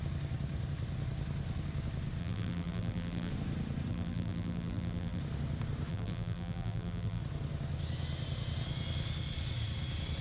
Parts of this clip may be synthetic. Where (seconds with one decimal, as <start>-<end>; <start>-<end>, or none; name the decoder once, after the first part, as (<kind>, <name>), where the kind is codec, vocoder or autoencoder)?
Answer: 2.2-3.3 (vocoder, BigVGAN v2); 3.9-5.2; 5.9-7.2